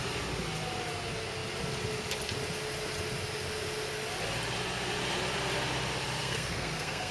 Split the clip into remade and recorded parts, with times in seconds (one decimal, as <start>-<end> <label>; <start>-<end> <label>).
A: 0.0-6.2 recorded; 6.2-7.1 remade